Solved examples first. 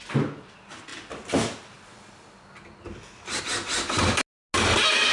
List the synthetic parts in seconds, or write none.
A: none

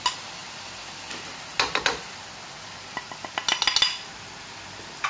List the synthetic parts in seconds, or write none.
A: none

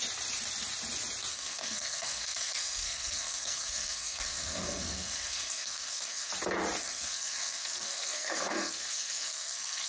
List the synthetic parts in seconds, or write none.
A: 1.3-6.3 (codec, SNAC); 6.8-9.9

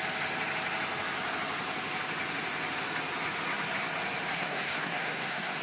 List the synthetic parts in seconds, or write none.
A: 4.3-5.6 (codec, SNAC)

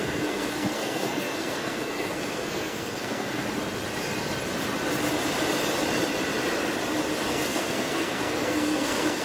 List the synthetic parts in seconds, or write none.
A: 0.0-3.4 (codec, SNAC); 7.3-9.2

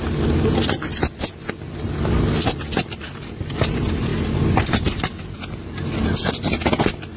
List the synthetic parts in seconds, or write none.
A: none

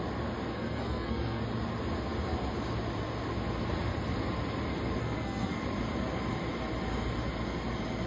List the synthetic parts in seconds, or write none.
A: 0.5-1.4 (codec, SNAC); 5.0-5.6